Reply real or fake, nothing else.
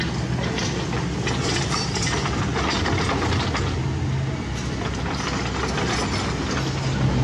real